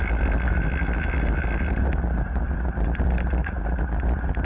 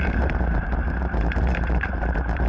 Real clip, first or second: first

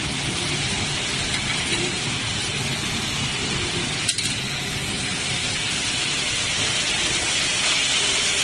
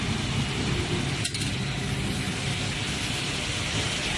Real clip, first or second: second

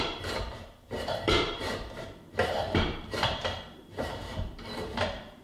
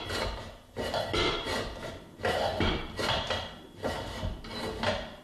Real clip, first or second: second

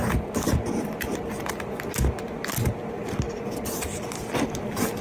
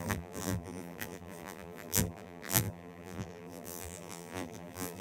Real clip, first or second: first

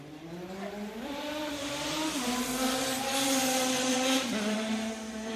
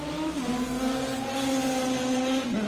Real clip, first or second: second